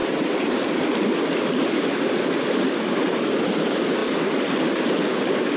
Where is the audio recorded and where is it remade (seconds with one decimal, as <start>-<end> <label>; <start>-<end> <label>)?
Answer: 0.0-0.8 remade; 0.8-5.6 recorded